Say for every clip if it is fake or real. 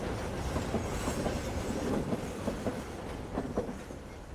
real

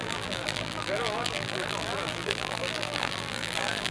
fake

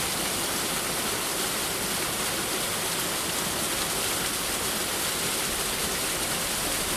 real